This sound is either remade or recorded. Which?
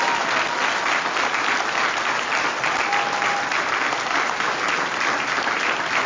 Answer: recorded